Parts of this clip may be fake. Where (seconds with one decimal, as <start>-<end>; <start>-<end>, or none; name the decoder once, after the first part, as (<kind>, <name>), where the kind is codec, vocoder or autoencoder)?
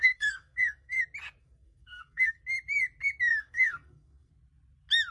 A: 0.0-1.0 (codec, SNAC); 1.4-2.4; 3.3-4.3